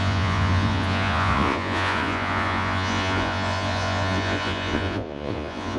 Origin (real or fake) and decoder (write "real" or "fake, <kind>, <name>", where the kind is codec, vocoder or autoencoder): fake, vocoder, Vocos